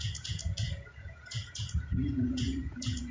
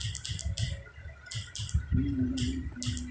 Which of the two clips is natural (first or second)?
second